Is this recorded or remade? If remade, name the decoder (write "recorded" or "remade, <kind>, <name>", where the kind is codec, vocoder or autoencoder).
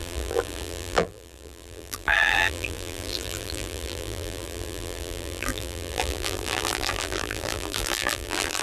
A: remade, vocoder, BigVGAN v2